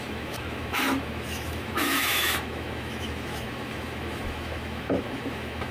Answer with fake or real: fake